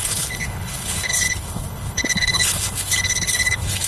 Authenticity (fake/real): fake